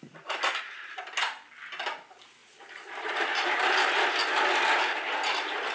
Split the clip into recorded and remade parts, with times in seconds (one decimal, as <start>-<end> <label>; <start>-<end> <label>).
0.0-1.0 remade; 1.0-2.4 recorded; 2.4-4.1 remade; 4.1-5.7 recorded